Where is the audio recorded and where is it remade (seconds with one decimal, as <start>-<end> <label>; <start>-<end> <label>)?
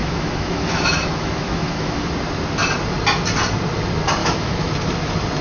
0.0-2.1 remade; 2.1-4.2 recorded; 4.2-4.7 remade; 4.7-5.4 recorded